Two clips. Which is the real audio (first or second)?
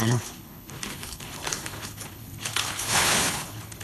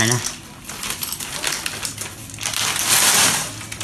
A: second